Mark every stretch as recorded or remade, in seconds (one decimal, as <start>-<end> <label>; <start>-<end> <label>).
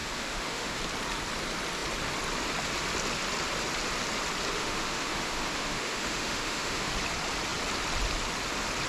0.0-0.8 remade; 0.8-4.6 recorded; 4.6-6.9 remade; 6.9-8.9 recorded